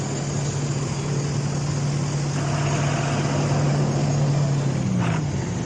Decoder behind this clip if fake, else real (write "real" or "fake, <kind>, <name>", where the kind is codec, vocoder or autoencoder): real